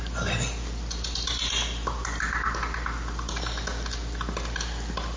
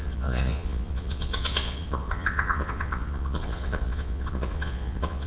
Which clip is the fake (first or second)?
second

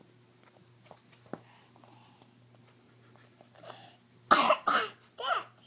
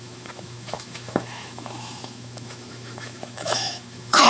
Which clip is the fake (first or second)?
second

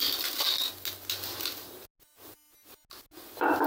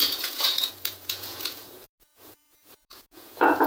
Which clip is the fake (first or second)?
second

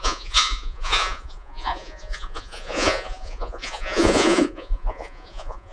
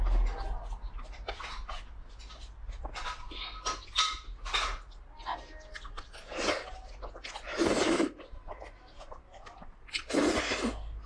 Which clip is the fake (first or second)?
first